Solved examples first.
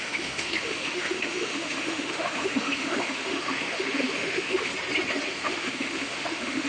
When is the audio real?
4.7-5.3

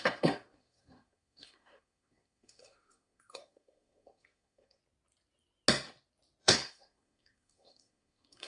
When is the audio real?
4.8-6.4

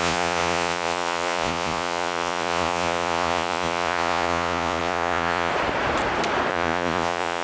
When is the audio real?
5.5-6.5

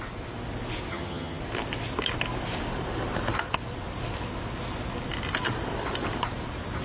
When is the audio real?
0.0-0.9; 1.4-6.8

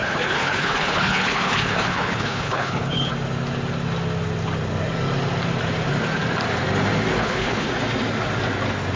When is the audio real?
3.1-7.1; 7.7-9.0

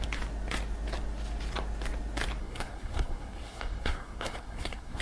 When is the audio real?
0.0-2.4